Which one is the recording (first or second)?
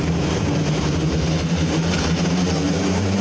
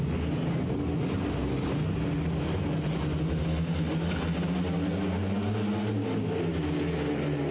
second